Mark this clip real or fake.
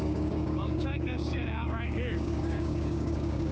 fake